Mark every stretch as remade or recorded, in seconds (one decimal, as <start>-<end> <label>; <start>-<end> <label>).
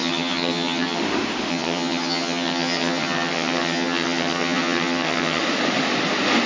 0.0-1.0 remade; 1.0-1.5 recorded; 1.5-5.4 remade; 5.4-6.5 recorded